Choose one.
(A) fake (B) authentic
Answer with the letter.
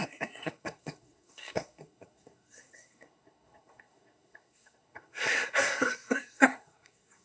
A